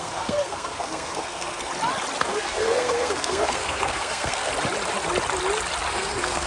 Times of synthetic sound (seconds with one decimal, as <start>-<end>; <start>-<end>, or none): 0.0-1.7; 2.2-4.5; 5.9-6.5